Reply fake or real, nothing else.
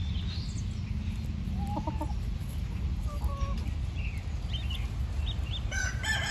real